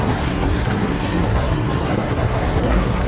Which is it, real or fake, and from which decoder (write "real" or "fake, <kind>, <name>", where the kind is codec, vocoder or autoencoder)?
fake, codec, SNAC